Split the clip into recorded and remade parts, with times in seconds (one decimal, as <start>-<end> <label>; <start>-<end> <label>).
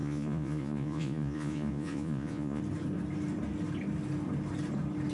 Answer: 0.0-2.6 remade; 2.6-5.1 recorded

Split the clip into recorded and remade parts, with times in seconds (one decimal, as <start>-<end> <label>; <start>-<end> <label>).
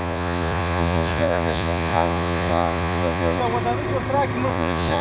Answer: 0.0-3.4 remade; 3.4-4.5 recorded; 4.5-5.0 remade